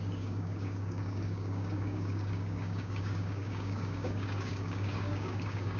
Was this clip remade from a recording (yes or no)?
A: yes